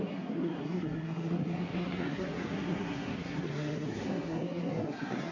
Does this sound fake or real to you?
fake